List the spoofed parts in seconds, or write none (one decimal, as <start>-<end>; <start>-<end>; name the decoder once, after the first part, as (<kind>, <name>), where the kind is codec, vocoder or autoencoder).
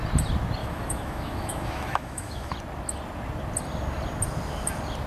0.6-2.5 (autoencoder, DAC-VAE)